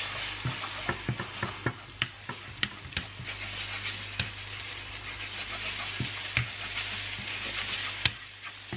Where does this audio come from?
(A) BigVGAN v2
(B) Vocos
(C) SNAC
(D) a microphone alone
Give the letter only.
D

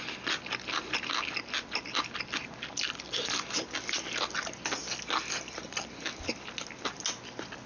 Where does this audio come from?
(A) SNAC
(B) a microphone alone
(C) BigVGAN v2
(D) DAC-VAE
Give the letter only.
B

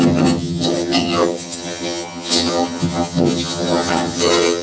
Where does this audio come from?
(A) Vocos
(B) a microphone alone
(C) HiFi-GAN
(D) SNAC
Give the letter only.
C